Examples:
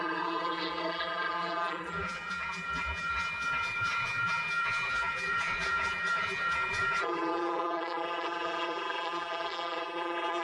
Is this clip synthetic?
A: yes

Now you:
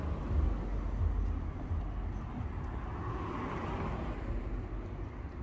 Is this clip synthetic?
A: no